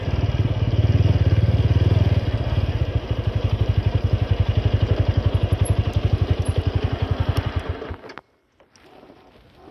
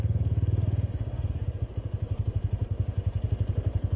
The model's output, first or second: second